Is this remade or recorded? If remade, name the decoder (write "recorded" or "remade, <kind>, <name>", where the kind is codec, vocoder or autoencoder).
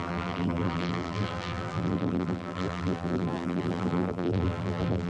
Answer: remade, vocoder, BigVGAN v2